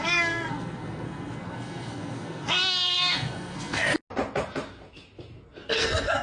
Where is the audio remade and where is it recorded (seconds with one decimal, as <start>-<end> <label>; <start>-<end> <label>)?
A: 0.0-3.9 remade; 3.9-5.7 recorded; 5.7-6.2 remade